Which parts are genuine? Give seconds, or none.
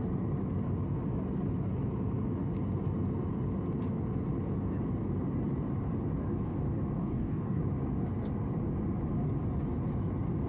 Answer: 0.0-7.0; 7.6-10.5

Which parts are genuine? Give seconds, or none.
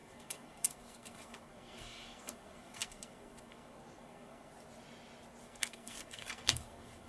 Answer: 4.5-5.4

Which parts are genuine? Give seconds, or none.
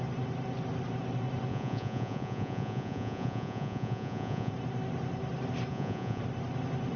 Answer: 0.0-1.5; 4.5-5.7; 6.2-7.0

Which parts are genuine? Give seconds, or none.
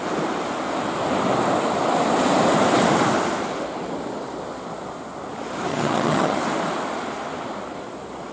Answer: 0.0-5.7; 6.4-8.3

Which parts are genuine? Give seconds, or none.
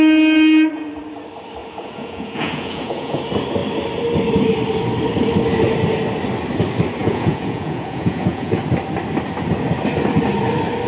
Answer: 0.0-1.6; 3.2-7.0; 8.6-10.9